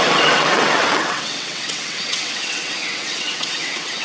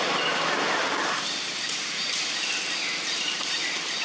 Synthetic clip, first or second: first